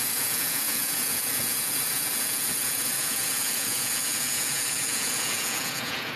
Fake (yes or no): yes